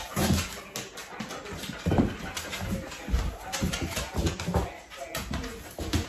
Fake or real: real